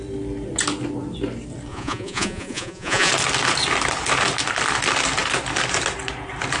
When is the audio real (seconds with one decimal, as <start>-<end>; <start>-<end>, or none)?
0.0-1.7; 3.1-6.6